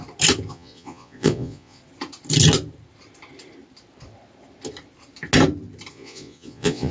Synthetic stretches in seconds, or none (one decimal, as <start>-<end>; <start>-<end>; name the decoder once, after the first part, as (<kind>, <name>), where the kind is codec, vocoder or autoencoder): 0.5-1.8 (vocoder, Vocos); 5.9-6.9